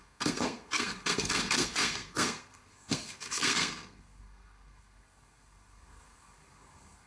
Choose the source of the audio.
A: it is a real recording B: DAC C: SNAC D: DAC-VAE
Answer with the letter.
C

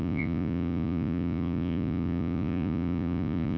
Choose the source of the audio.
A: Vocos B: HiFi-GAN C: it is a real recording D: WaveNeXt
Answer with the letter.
A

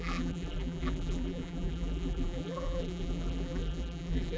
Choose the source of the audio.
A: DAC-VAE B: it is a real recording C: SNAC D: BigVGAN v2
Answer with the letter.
D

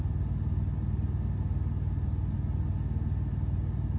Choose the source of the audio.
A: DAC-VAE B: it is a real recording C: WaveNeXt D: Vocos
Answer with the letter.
B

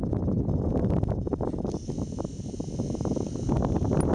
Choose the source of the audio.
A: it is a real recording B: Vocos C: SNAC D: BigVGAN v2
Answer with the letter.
A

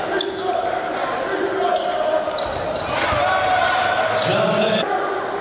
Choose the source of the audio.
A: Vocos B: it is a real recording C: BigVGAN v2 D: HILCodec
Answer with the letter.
B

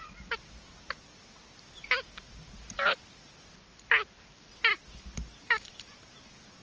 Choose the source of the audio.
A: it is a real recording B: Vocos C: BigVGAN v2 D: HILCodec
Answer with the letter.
A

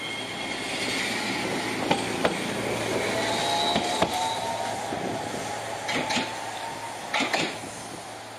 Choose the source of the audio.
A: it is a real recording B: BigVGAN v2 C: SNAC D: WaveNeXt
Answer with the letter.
A